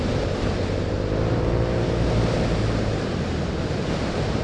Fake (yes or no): yes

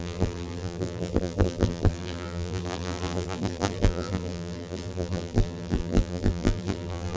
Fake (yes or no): yes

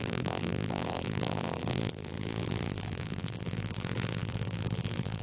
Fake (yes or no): yes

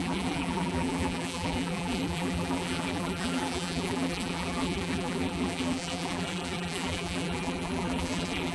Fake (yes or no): yes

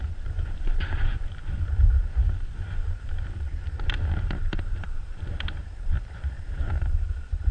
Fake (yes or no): yes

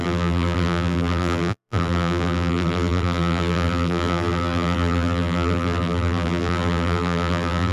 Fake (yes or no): yes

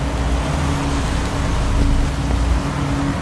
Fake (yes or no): no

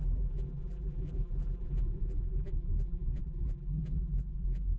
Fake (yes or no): yes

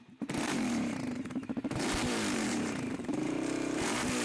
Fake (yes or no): yes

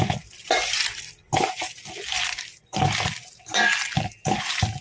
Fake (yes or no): yes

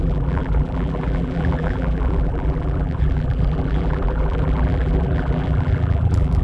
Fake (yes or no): yes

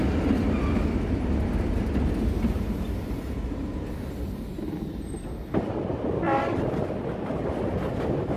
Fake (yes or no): no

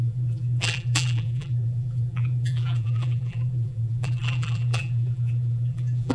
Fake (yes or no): yes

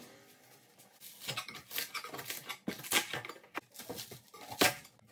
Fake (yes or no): no